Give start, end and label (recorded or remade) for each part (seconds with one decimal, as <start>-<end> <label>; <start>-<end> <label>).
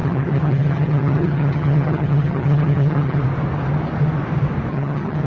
0.0-3.2 remade; 3.2-4.7 recorded; 4.7-5.3 remade